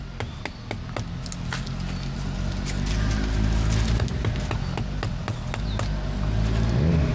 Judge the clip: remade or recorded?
recorded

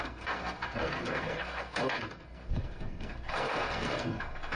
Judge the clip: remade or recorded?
remade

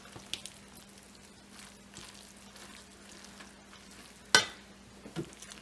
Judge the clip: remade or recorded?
recorded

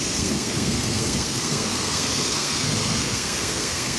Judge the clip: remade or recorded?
remade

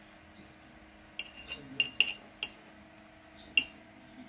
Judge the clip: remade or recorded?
recorded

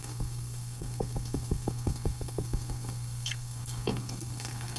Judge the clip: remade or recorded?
remade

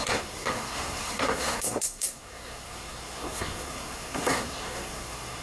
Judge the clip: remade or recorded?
remade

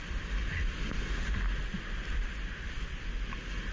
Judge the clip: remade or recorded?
recorded